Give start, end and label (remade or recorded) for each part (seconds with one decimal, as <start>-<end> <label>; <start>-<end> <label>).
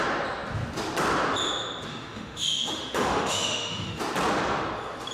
0.0-1.9 recorded; 1.9-4.0 remade; 4.0-5.1 recorded